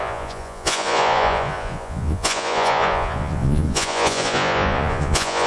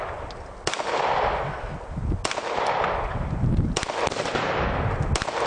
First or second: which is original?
second